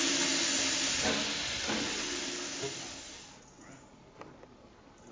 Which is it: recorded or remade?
recorded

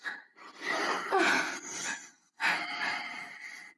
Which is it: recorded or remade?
recorded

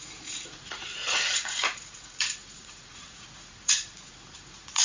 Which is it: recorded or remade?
remade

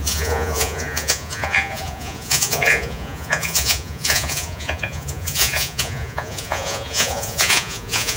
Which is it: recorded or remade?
remade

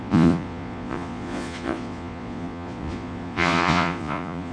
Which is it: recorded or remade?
remade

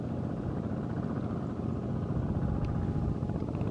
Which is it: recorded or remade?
recorded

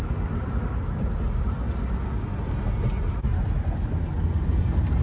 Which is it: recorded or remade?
recorded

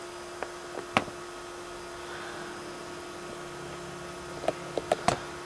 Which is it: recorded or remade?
recorded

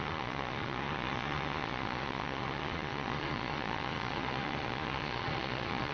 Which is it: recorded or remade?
remade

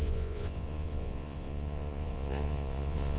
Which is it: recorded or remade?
remade